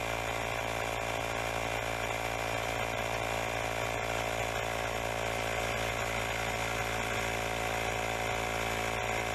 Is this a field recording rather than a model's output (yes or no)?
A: yes